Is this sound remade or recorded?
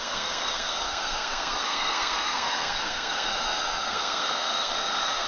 remade